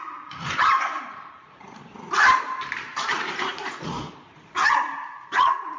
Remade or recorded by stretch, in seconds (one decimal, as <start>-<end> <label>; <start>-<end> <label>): 0.0-1.9 remade; 1.9-3.4 recorded; 3.4-5.8 remade